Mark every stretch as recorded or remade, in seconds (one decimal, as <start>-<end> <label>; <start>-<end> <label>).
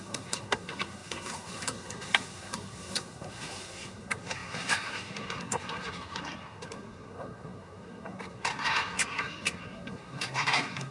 0.0-10.9 remade